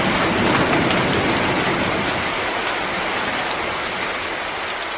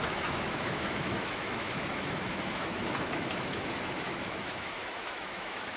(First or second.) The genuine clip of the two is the first